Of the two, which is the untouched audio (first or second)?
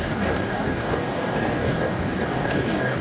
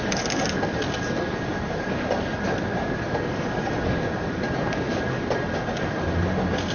second